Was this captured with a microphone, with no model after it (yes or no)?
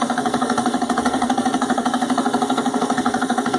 no